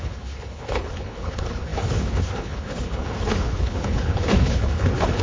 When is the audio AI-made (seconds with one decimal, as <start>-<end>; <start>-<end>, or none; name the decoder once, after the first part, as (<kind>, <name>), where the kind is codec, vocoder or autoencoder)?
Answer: 0.0-5.2 (codec, HILCodec)